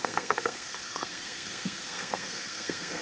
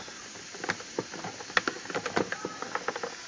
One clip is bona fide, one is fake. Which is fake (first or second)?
first